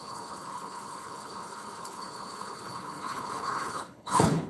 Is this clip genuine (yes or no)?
no